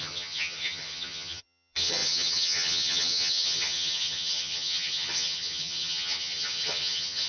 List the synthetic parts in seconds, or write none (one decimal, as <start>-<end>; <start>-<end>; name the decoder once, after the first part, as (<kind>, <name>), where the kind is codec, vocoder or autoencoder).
0.0-7.3 (vocoder, HiFi-GAN)